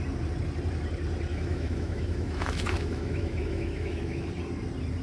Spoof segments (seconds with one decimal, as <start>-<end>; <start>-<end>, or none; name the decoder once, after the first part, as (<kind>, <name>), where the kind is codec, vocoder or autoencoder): 1.3-4.3 (autoencoder, DAC-VAE)